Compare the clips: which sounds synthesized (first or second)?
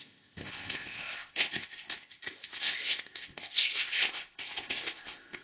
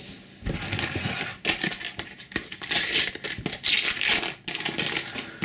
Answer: first